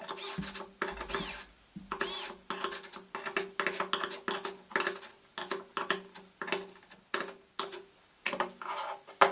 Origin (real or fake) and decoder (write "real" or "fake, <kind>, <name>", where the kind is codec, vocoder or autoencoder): real